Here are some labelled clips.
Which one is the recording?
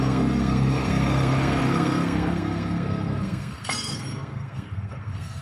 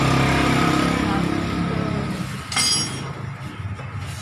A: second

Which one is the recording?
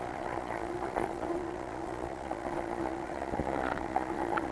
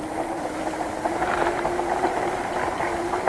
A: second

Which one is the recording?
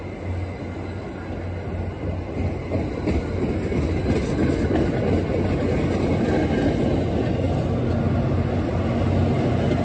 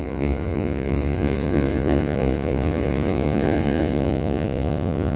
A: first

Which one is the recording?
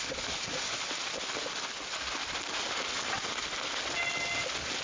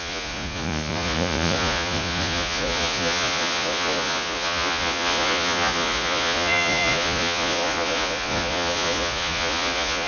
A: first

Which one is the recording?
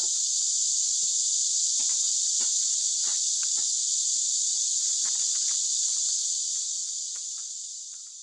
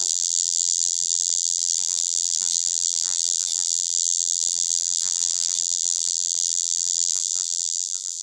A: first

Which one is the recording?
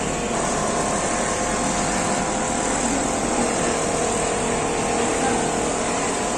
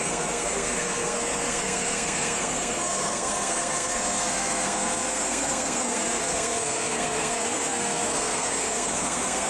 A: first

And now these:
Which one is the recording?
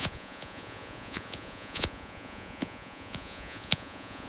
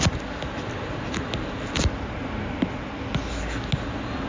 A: second